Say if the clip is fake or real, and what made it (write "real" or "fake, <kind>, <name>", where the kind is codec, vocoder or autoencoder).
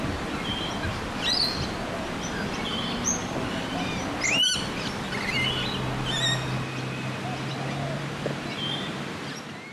real